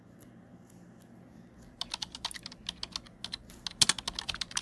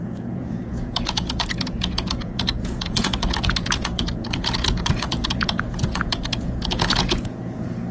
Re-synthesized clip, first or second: second